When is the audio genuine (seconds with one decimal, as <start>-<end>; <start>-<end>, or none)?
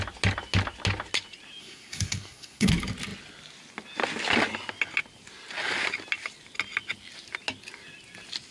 0.0-1.6; 2.7-8.5